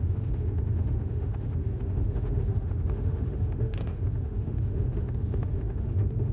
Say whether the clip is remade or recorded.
remade